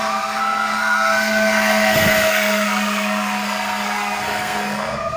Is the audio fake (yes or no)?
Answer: yes